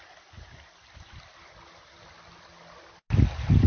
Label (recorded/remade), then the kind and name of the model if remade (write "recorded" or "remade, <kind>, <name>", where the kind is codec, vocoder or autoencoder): recorded